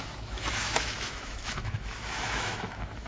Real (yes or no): no